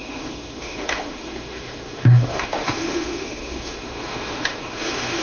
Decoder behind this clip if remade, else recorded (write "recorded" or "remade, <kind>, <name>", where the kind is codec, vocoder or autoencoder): remade, autoencoder, DAC-VAE